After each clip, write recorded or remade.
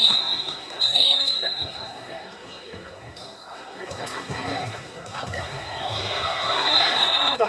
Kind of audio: remade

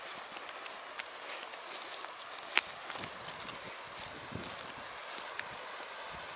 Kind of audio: recorded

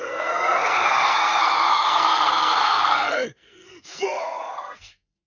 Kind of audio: remade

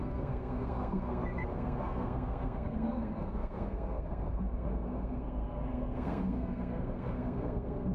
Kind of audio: remade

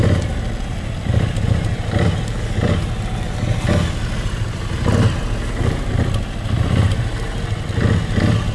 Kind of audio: recorded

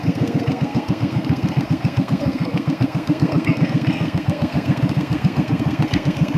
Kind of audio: remade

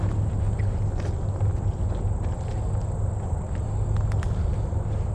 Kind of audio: recorded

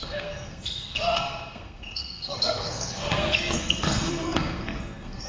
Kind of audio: remade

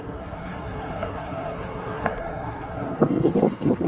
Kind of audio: remade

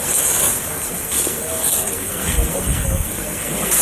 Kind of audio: remade